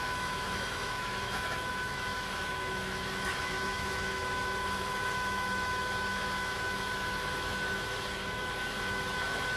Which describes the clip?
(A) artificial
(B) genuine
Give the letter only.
A